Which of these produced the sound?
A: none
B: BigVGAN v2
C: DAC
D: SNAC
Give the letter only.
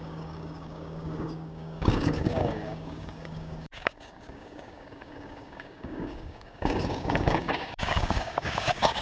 C